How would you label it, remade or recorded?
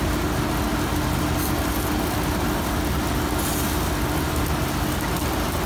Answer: recorded